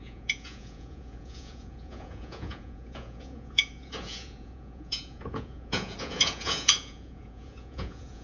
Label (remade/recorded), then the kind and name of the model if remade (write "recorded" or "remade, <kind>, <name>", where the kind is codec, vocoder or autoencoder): remade, vocoder, Vocos